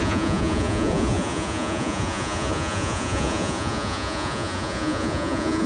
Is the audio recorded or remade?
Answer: remade